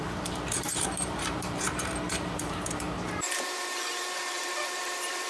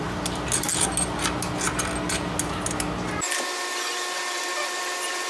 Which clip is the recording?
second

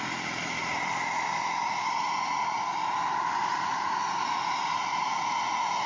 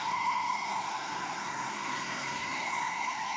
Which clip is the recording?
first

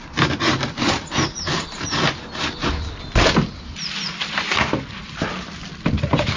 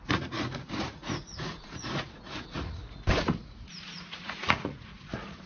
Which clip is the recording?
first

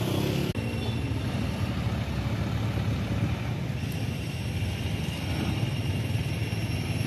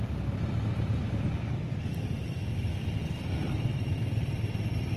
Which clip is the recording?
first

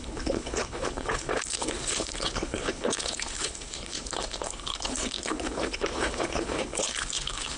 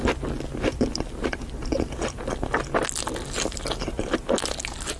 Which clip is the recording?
second